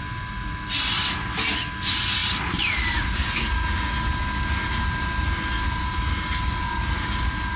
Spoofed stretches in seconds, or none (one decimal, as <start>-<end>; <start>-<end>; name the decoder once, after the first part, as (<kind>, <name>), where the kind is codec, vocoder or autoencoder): none